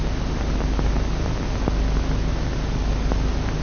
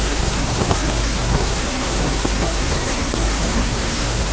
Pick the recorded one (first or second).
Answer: first